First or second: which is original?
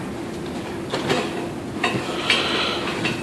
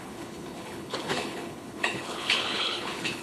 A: first